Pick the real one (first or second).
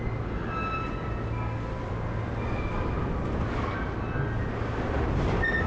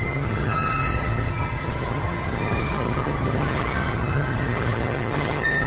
first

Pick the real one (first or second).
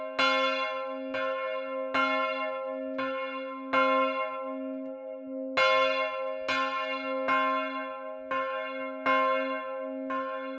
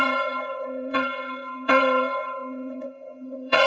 first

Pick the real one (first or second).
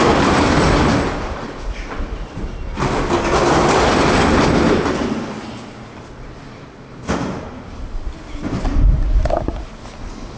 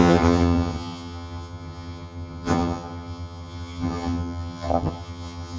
first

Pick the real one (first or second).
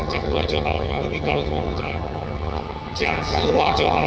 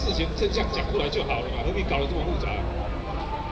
second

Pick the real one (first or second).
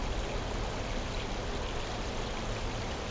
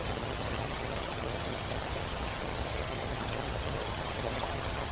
first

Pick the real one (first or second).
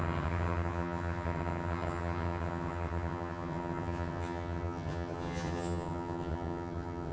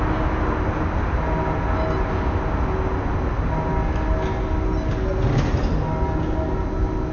second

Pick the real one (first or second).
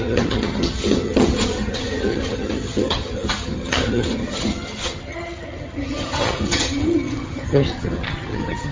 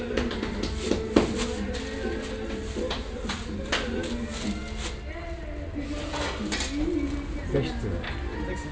second